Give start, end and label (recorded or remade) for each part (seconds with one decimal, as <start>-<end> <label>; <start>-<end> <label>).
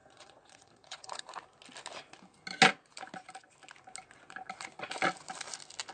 0.0-1.2 remade; 1.2-5.9 recorded